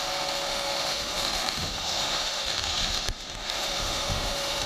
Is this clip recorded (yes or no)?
no